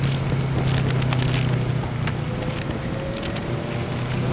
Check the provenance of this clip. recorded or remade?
recorded